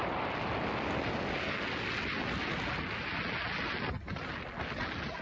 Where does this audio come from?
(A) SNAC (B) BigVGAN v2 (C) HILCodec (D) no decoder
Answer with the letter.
D